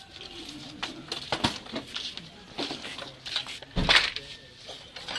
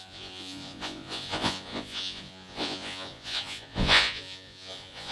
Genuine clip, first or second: first